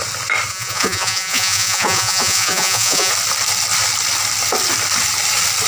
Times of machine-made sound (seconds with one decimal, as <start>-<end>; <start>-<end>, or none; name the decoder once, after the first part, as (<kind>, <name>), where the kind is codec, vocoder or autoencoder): 0.5-3.1 (vocoder, Vocos)